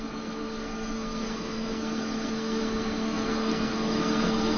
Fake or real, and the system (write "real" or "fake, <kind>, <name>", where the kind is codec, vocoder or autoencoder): fake, codec, SNAC